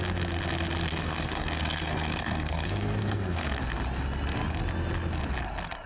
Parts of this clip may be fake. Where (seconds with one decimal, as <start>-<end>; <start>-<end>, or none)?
0.9-3.5